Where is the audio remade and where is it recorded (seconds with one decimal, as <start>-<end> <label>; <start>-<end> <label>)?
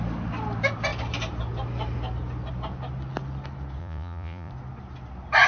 0.0-3.8 recorded; 3.8-4.5 remade; 4.5-5.5 recorded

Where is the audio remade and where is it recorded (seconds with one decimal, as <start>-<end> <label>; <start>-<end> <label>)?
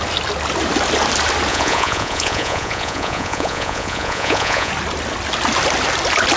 0.0-1.5 recorded; 1.5-4.7 remade; 4.7-6.4 recorded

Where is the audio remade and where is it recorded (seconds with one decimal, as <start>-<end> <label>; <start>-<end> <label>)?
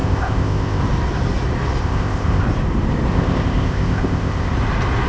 0.0-0.8 remade; 0.8-1.8 recorded; 1.8-2.4 remade; 2.4-3.1 recorded; 3.1-4.5 remade; 4.5-5.1 recorded